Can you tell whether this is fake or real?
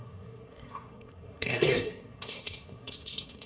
fake